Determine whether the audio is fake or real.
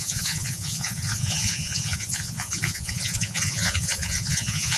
fake